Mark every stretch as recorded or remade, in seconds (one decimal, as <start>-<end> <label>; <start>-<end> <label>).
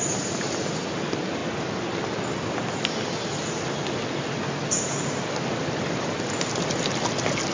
0.0-7.5 recorded